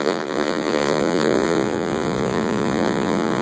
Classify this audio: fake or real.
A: fake